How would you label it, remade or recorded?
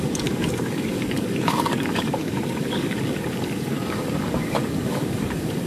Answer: remade